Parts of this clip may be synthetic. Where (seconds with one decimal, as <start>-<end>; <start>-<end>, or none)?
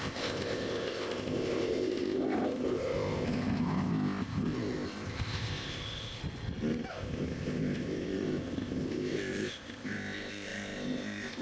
0.0-6.2; 6.9-11.4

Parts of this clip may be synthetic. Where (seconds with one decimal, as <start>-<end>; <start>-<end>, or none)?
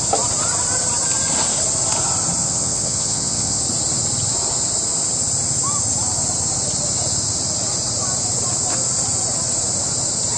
2.4-3.6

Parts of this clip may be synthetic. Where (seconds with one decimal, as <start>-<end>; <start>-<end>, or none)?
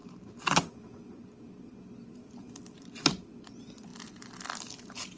none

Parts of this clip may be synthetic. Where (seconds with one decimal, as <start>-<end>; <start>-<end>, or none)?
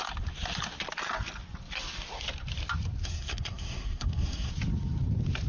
3.0-4.5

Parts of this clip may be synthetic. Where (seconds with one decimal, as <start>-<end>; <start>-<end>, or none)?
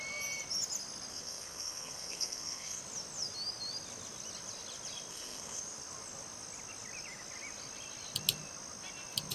1.1-2.8; 5.1-5.6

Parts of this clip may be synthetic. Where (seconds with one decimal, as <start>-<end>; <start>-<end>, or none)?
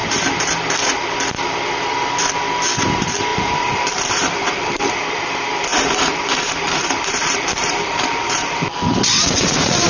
3.3-4.9; 5.7-9.9